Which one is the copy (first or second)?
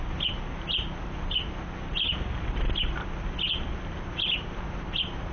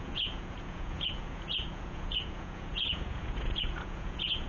second